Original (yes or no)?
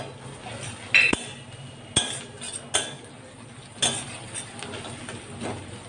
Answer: yes